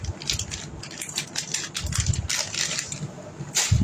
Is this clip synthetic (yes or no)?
no